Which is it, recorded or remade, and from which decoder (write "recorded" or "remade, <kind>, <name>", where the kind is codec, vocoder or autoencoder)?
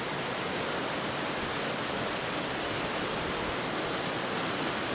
recorded